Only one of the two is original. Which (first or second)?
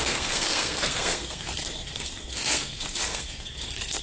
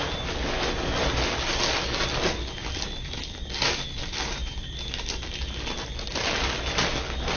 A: second